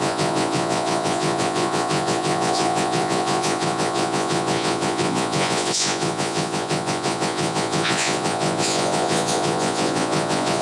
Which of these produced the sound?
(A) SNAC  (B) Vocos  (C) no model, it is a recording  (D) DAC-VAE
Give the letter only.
B